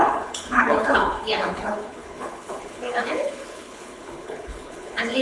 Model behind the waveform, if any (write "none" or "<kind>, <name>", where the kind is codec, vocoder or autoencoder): codec, HILCodec